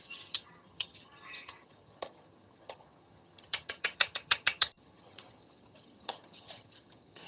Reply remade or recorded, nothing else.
remade